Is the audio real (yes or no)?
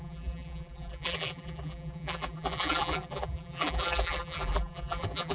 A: no